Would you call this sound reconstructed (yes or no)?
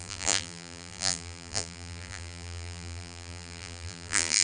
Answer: yes